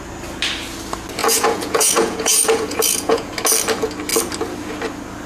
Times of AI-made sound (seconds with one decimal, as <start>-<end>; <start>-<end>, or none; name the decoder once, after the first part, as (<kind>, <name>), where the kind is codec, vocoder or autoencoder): 1.2-3.3 (vocoder, Vocos)